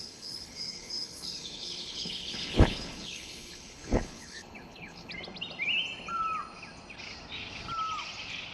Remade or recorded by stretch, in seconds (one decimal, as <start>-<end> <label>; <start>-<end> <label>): 0.0-5.1 remade; 5.1-8.5 recorded